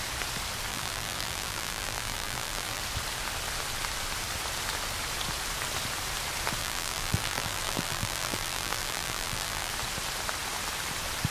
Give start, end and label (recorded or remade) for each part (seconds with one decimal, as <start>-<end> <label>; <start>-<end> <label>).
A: 0.0-0.7 recorded; 0.7-2.8 remade; 2.8-6.6 recorded; 6.6-9.7 remade; 9.7-11.3 recorded